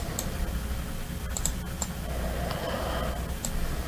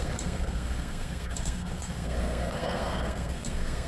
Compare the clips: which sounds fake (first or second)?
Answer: second